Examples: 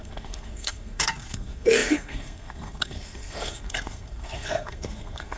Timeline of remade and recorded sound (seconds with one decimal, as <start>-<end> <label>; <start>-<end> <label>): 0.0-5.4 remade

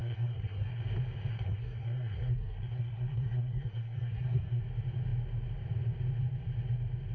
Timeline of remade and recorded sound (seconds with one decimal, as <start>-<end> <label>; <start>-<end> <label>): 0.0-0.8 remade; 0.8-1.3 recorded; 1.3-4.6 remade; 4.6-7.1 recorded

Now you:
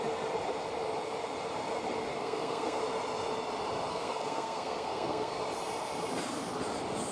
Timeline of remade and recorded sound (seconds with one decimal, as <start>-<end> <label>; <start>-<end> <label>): 0.0-2.1 recorded; 2.1-2.8 remade; 2.8-3.9 recorded; 3.9-5.4 remade; 5.4-7.1 recorded

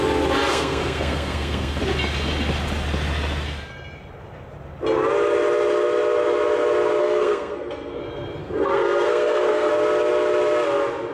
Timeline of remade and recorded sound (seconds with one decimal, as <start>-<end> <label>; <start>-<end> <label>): 0.0-0.5 recorded; 0.5-1.8 remade; 1.8-7.0 recorded; 7.0-8.0 remade; 8.0-8.4 recorded; 8.4-9.7 remade; 9.7-11.1 recorded